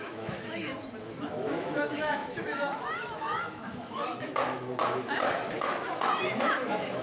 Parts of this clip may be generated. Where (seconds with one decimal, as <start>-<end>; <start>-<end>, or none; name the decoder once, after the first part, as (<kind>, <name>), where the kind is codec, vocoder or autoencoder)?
0.0-0.7 (autoencoder, DAC-VAE); 1.2-7.0